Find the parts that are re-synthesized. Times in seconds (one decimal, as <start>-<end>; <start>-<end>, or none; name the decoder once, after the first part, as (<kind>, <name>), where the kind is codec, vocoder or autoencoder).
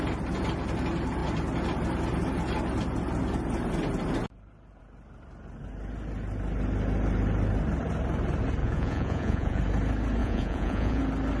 8.6-9.6 (vocoder, Vocos); 10.2-11.0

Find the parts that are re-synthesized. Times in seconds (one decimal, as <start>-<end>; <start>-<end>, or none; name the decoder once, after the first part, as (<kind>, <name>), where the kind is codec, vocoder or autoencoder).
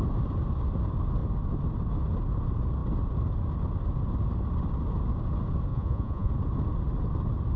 5.7-6.3 (vocoder, Vocos)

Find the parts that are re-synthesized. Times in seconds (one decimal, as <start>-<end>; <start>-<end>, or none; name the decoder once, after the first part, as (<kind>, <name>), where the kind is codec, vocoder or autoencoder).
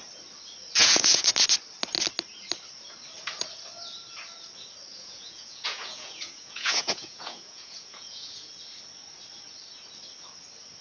0.8-1.3 (vocoder, Vocos); 4.9-8.5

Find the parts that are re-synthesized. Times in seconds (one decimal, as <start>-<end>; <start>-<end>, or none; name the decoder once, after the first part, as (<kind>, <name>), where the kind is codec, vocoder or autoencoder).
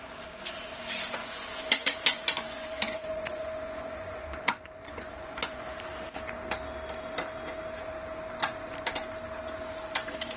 1.2-5.7 (vocoder, Vocos)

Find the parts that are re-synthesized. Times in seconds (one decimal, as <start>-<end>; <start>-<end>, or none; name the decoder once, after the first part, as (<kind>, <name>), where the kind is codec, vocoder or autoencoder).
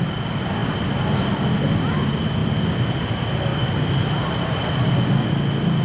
none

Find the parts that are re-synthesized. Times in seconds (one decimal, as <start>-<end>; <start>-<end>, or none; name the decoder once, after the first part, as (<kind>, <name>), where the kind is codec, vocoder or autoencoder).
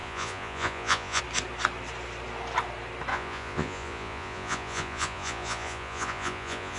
0.0-1.2 (vocoder, Vocos); 3.1-6.8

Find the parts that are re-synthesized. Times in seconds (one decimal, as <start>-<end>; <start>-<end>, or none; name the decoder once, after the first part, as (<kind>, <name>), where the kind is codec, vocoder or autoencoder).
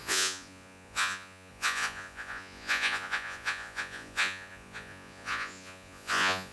0.0-6.5 (vocoder, Vocos)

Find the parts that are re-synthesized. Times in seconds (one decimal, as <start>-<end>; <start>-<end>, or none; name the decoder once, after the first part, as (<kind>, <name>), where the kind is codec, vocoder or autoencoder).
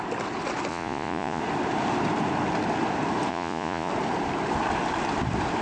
0.7-1.4 (vocoder, Vocos); 3.3-3.9